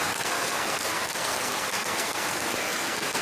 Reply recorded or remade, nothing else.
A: remade